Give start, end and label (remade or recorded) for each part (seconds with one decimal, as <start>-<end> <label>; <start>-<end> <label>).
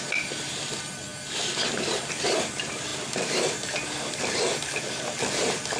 0.0-5.8 recorded